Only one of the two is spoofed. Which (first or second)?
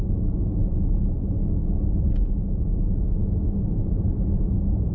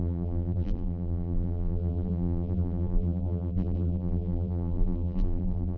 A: second